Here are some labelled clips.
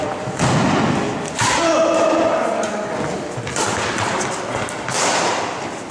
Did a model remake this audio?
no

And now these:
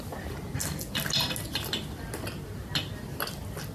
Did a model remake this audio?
no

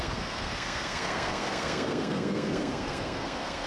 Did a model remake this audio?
yes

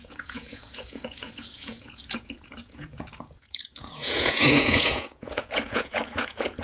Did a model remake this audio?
yes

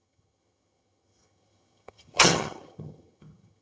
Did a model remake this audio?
yes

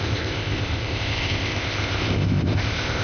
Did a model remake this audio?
yes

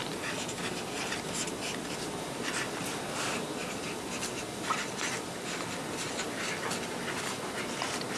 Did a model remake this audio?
no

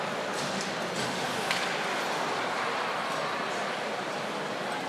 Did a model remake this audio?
no